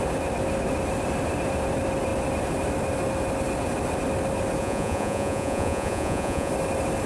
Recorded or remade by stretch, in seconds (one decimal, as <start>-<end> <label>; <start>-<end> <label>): 0.0-4.6 recorded; 4.6-6.5 remade; 6.5-7.1 recorded